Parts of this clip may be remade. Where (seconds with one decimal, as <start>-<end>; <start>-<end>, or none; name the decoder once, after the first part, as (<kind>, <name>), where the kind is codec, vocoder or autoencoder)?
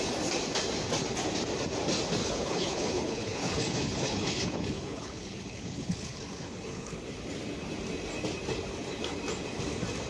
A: 2.2-7.0 (codec, HILCodec)